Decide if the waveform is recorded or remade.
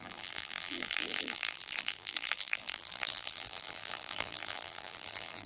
remade